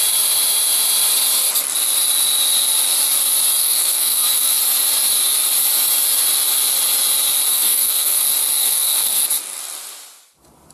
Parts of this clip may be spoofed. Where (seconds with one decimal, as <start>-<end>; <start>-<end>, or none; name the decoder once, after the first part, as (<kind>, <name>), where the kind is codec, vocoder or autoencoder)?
3.6-4.6 (codec, SNAC); 7.5-8.2; 8.6-9.2